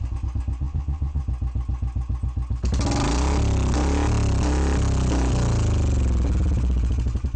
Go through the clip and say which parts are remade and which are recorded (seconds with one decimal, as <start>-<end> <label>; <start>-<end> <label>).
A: 0.0-0.6 recorded; 0.6-1.2 remade; 1.2-7.4 recorded